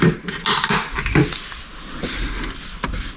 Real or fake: real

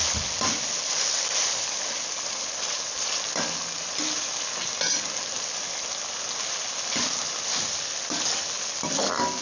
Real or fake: real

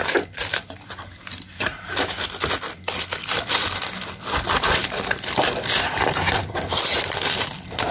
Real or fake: real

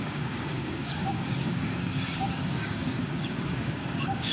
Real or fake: fake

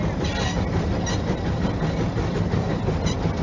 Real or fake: real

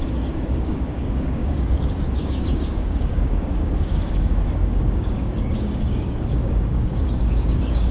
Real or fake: fake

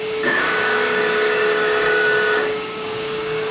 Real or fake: fake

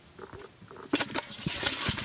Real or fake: real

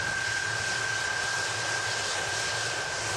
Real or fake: real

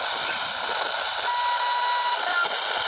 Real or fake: real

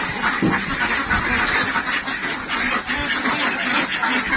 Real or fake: real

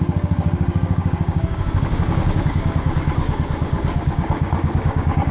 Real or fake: fake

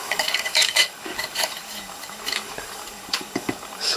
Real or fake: fake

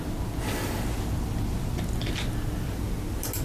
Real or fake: real